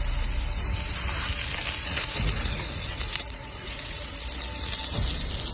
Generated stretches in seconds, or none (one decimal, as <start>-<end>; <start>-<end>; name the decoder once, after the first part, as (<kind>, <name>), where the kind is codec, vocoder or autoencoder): 1.8-4.2 (vocoder, Vocos)